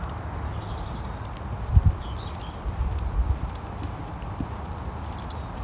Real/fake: real